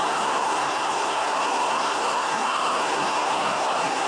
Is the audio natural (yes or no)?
no